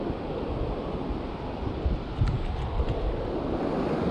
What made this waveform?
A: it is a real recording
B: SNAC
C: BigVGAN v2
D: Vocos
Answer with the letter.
A